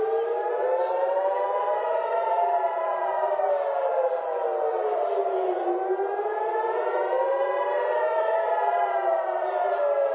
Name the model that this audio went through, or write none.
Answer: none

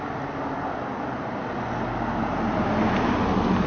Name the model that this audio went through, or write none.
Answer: none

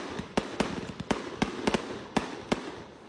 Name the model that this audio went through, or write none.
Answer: none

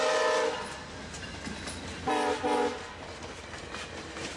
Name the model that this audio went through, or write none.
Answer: none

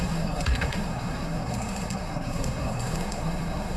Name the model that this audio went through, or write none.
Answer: codec, SNAC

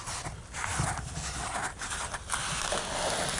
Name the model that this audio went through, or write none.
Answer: none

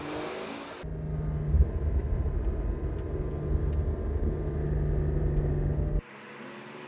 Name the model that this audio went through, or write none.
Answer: none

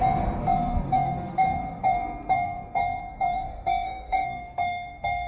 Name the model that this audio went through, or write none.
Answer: codec, SNAC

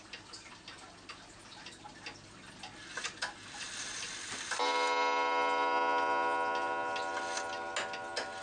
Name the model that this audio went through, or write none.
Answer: none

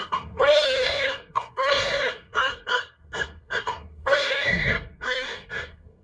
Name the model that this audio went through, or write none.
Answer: codec, SNAC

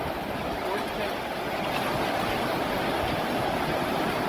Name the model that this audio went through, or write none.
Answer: none